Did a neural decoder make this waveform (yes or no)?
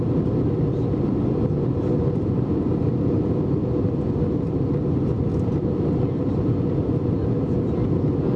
no